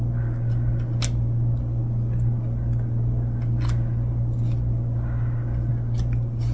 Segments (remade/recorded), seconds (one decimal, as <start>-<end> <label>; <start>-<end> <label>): 0.0-6.5 recorded